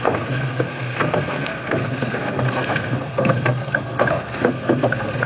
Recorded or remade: remade